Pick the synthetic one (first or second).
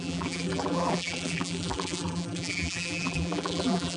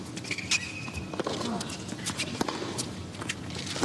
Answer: first